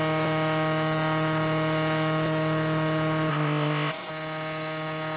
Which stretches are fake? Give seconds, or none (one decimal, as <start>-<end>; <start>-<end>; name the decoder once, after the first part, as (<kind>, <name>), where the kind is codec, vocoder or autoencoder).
3.3-4.1 (codec, ZipCodec)